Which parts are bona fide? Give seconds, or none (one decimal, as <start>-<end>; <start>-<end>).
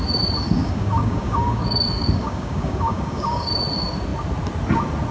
0.0-0.6; 3.5-5.1